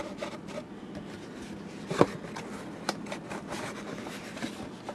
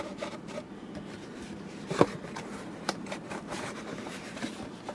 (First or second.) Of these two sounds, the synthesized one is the second